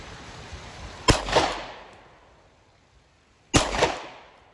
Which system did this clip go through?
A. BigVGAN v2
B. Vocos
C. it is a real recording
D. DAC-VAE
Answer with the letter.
C